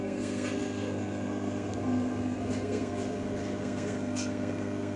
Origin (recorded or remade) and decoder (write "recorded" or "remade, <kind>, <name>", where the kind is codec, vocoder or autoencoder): remade, codec, SNAC